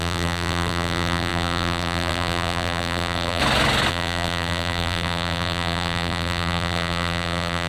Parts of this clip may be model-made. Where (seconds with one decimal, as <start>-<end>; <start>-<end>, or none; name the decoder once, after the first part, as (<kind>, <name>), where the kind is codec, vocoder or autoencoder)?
0.0-3.4 (vocoder, BigVGAN v2); 3.9-7.7